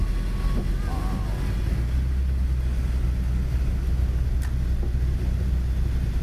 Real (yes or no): yes